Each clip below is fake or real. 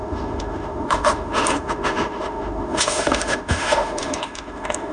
fake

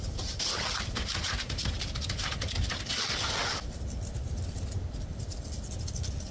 real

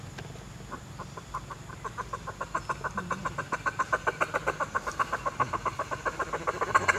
real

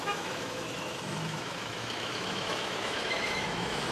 fake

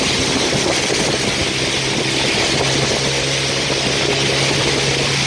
real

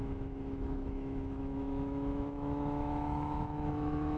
fake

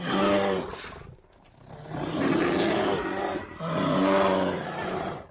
real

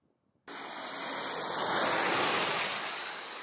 real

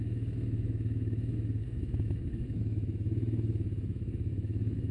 fake